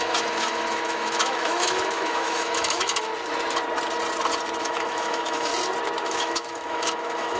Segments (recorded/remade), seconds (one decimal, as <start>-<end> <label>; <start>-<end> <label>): 0.0-3.1 remade; 3.1-4.6 recorded; 4.6-5.5 remade; 5.5-6.0 recorded; 6.0-7.4 remade